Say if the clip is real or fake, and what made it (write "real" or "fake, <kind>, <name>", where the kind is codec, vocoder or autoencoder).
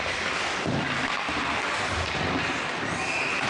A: real